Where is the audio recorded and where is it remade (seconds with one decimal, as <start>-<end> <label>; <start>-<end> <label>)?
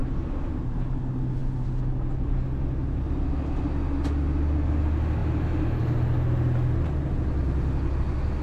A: 0.0-8.4 recorded